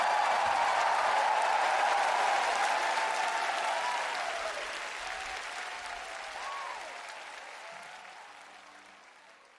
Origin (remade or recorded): recorded